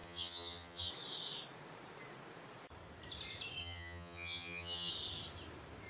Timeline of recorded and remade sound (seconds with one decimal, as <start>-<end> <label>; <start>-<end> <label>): 0.0-0.9 remade; 0.9-3.6 recorded; 3.6-4.9 remade; 4.9-5.9 recorded

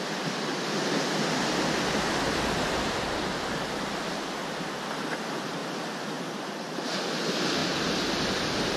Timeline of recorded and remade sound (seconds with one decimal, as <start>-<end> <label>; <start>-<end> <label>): 0.0-0.5 remade; 0.5-4.9 recorded; 4.9-5.6 remade; 5.6-6.3 recorded; 6.3-7.6 remade; 7.6-8.3 recorded; 8.3-8.8 remade

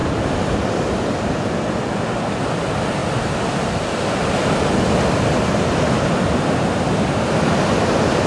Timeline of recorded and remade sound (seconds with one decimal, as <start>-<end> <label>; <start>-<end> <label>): 0.0-1.2 recorded; 1.2-3.0 remade; 3.0-6.1 recorded; 6.1-8.3 remade

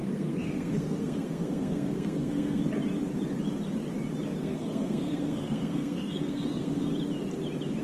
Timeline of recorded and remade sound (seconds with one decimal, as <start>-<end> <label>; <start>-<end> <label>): 0.0-2.6 remade; 2.6-4.4 recorded; 4.4-6.9 remade; 6.9-7.8 recorded

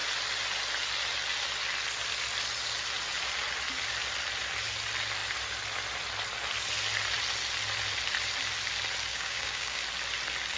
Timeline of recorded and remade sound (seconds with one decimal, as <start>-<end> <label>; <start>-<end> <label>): 0.0-9.1 recorded; 9.1-9.8 remade; 9.8-10.6 recorded

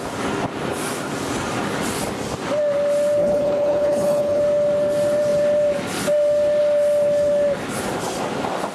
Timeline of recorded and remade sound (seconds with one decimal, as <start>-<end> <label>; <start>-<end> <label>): 0.0-3.2 recorded; 3.2-4.4 remade; 4.4-8.7 recorded

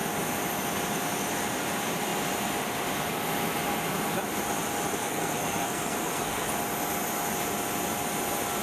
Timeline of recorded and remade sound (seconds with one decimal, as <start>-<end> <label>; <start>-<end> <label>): 0.0-5.0 recorded; 5.0-6.5 remade; 6.5-8.6 recorded

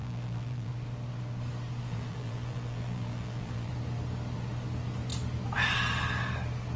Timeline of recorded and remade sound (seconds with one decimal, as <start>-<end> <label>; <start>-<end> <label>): 0.0-0.7 remade; 0.7-1.8 recorded; 1.8-3.7 remade; 3.7-6.8 recorded